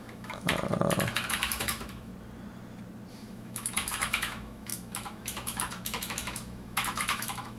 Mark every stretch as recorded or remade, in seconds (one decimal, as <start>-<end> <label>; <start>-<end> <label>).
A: 0.0-0.5 remade; 0.5-1.1 recorded; 1.1-2.1 remade; 2.1-3.1 recorded; 3.1-7.6 remade